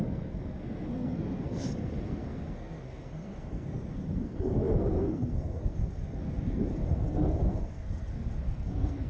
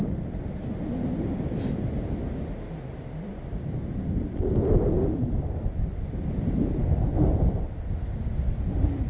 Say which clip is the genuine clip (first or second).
second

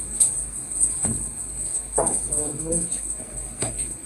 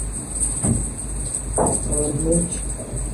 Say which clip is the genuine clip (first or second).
second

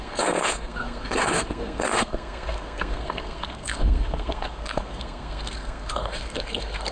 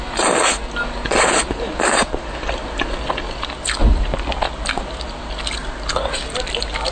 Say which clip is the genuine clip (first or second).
second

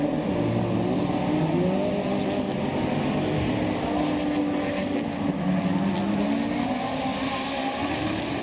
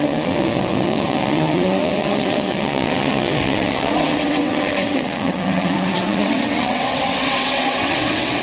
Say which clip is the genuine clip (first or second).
first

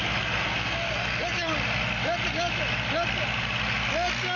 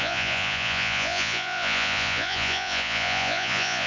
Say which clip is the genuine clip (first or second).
first